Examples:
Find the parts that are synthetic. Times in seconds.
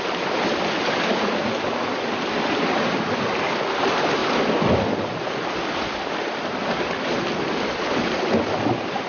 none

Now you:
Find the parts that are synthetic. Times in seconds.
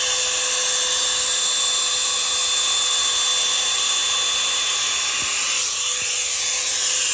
3.3-3.9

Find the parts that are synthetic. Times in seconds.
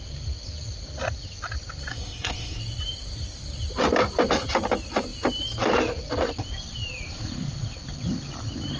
1.9-2.6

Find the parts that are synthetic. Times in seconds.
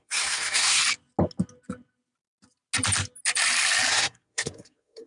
0.0-0.8; 3.9-5.1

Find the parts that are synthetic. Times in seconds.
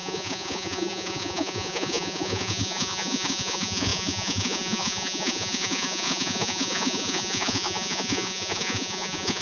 0.0-9.4